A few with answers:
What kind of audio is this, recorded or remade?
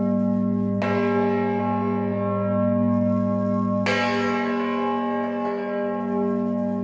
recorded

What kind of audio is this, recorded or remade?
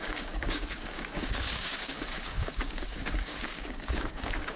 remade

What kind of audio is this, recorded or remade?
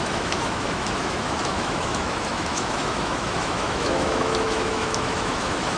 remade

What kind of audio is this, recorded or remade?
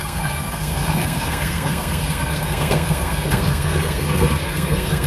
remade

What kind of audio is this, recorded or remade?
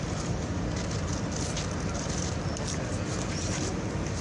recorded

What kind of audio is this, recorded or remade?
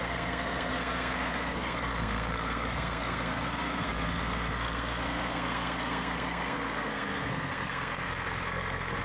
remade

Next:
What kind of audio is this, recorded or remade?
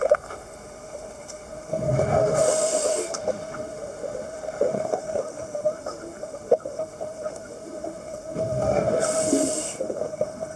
remade